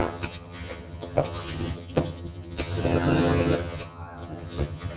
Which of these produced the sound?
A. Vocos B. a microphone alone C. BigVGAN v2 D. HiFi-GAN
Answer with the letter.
D